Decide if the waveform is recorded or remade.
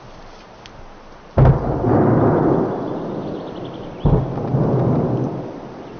recorded